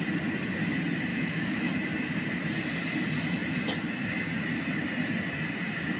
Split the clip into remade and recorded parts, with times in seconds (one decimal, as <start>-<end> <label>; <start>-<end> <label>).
0.0-1.1 recorded; 1.1-1.7 remade; 1.7-6.0 recorded